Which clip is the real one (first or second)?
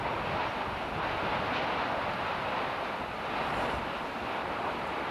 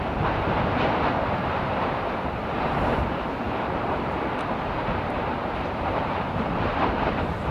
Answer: first